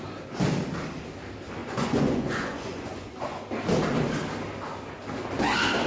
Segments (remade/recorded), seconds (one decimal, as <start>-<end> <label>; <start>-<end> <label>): 0.0-1.6 recorded; 1.6-3.4 remade; 3.4-5.9 recorded